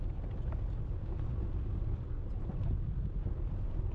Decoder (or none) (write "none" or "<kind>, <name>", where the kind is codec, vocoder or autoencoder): none